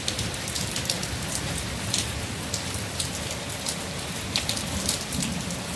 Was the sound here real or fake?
real